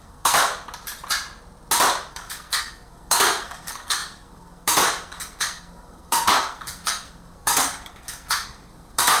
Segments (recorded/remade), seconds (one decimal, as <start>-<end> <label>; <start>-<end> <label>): 0.0-0.5 remade; 0.5-2.1 recorded; 2.1-9.2 remade